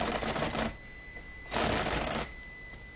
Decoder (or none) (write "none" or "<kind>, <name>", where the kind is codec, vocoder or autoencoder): none